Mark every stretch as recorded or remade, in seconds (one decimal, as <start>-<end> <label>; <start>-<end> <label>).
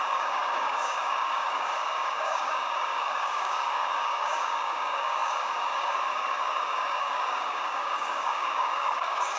0.0-9.4 remade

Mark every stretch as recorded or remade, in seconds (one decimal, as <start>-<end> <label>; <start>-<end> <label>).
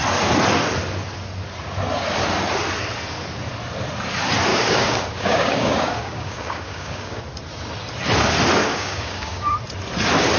0.0-4.5 recorded; 4.5-7.2 remade; 7.2-8.6 recorded; 8.6-9.5 remade; 9.5-10.4 recorded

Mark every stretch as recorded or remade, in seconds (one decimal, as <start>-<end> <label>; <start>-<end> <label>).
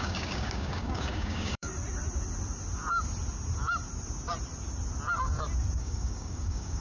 0.0-1.7 remade; 1.7-5.8 recorded; 5.8-6.8 remade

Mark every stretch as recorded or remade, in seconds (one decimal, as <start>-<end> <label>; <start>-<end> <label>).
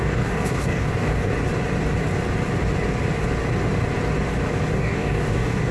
0.0-1.3 remade; 1.3-4.7 recorded; 4.7-5.7 remade